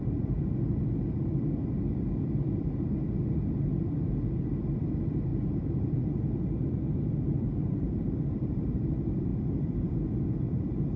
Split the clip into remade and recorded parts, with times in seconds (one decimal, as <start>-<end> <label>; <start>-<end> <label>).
0.0-5.3 recorded; 5.3-6.1 remade; 6.1-7.6 recorded; 7.6-8.8 remade; 8.8-11.0 recorded